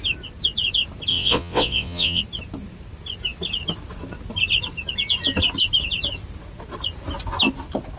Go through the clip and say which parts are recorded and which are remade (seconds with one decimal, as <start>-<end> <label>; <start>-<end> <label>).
0.0-1.1 recorded; 1.1-2.2 remade; 2.2-8.0 recorded